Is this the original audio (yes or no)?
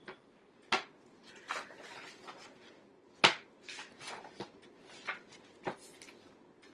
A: yes